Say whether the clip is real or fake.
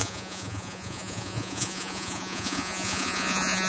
fake